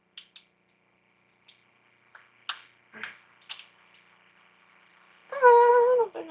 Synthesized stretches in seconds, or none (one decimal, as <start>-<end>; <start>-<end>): none